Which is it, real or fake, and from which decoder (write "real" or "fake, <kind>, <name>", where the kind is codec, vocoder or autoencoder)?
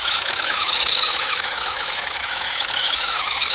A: fake, autoencoder, DAC-VAE